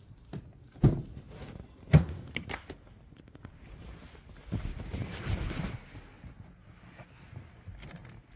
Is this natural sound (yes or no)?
yes